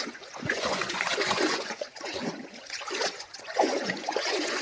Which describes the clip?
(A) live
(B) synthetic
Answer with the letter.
B